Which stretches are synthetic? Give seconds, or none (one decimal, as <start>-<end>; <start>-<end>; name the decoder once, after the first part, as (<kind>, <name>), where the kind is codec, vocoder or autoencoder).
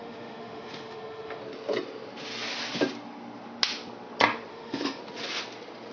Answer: 0.0-1.4 (autoencoder, DAC-VAE); 4.5-5.0